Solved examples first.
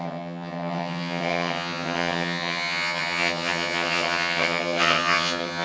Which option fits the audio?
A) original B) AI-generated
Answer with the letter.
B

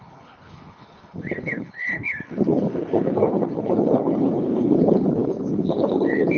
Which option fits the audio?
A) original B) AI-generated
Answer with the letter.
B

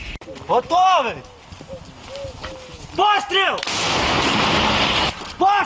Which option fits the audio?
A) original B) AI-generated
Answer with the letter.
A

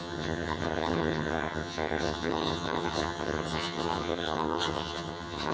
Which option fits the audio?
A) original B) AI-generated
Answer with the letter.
B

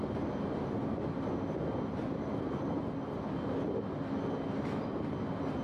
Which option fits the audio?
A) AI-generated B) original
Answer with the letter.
B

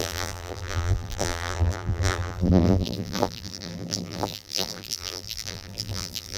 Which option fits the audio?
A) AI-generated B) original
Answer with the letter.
A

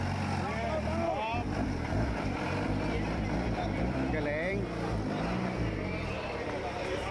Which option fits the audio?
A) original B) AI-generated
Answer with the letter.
A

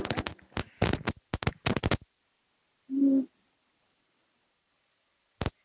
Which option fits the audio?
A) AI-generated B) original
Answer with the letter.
B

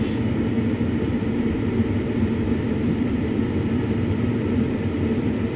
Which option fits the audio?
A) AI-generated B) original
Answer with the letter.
B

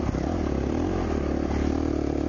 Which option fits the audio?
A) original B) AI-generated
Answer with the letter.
A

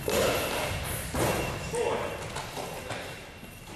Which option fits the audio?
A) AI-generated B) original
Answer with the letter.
B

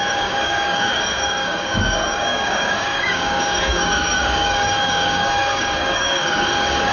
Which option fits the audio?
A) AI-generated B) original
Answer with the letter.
A